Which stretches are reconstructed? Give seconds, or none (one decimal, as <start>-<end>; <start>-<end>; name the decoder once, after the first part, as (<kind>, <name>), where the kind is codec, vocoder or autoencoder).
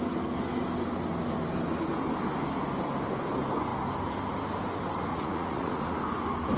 5.1-6.0 (vocoder, Vocos)